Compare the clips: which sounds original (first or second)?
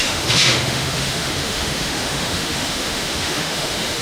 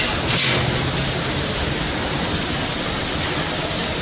second